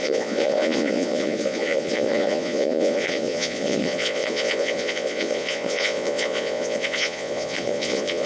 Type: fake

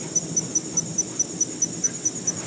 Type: real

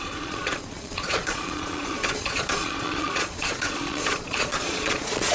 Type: fake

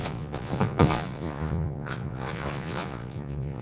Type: fake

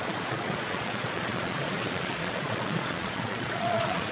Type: fake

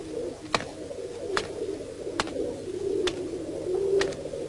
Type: real